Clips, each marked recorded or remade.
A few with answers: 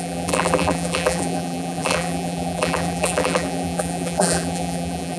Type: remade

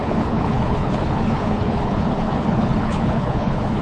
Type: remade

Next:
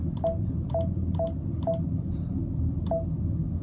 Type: recorded